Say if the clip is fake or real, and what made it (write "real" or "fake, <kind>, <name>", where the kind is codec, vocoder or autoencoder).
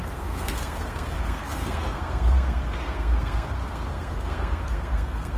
fake, codec, SNAC